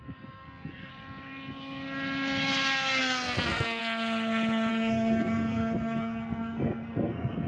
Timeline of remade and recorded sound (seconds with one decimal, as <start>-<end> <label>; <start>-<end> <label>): 0.0-0.9 remade; 0.9-3.0 recorded; 3.0-3.8 remade; 3.8-4.7 recorded; 4.7-7.5 remade